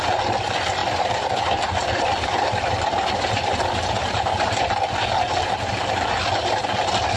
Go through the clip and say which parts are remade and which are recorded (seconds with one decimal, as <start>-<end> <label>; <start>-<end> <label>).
0.0-0.8 recorded; 0.8-4.5 remade; 4.5-7.2 recorded